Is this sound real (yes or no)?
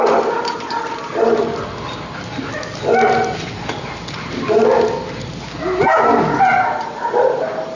yes